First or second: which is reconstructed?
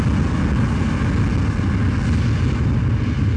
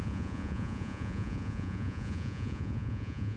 second